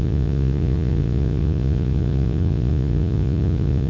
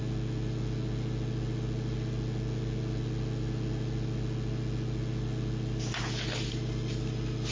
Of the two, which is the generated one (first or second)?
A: first